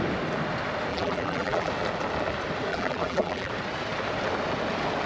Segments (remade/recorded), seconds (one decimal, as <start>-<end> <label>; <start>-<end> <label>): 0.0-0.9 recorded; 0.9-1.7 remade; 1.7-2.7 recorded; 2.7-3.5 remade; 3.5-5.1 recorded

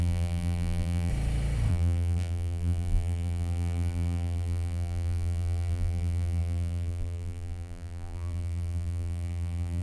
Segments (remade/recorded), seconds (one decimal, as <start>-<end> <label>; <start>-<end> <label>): 0.0-1.1 remade; 1.1-1.7 recorded; 1.7-9.8 remade

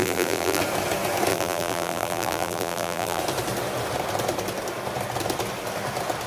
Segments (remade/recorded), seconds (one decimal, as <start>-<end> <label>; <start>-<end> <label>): 0.0-0.6 remade; 0.6-1.3 recorded; 1.3-3.2 remade; 3.2-6.3 recorded